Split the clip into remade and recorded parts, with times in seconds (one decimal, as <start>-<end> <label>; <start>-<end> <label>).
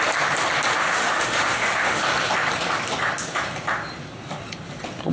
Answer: 0.0-0.8 recorded; 0.8-2.0 remade; 2.0-5.1 recorded